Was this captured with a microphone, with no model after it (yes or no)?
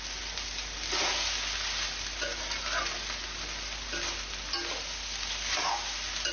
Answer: yes